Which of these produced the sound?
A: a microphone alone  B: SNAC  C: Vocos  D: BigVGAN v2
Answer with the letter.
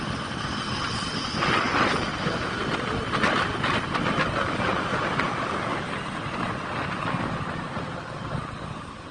A